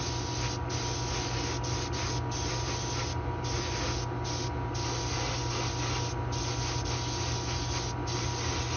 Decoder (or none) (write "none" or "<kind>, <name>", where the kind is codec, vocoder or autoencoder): none